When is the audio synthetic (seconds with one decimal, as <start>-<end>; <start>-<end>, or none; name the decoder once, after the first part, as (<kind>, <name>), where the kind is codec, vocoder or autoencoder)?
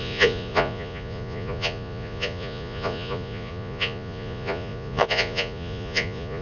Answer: 0.0-6.4 (vocoder, Vocos)